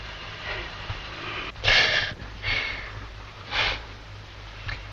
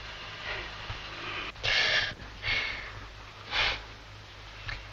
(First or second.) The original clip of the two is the second